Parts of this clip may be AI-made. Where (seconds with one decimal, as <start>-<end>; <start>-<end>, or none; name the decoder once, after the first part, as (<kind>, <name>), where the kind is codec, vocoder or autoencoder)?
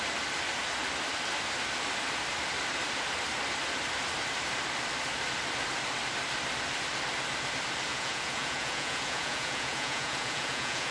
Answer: 7.9-10.9 (vocoder, Vocos)